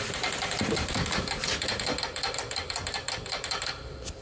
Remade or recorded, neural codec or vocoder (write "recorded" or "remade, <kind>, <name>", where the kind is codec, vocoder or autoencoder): remade, vocoder, BigVGAN v2